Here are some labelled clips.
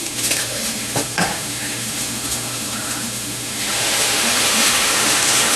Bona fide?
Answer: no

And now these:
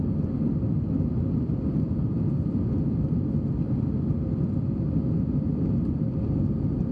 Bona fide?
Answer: yes